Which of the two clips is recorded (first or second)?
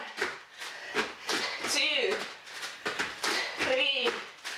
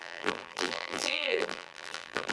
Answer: first